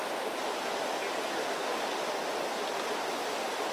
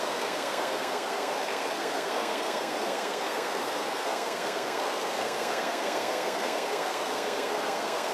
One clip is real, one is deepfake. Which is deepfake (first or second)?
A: second